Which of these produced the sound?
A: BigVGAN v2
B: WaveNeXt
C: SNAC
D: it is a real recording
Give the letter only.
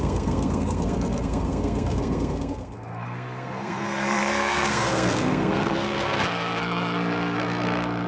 C